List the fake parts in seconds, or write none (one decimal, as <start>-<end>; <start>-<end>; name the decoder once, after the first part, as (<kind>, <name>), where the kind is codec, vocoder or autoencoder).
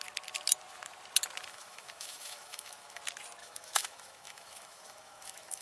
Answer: 1.5-3.0 (autoencoder, DAC-VAE); 3.4-5.6